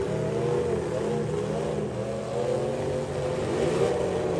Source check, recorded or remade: recorded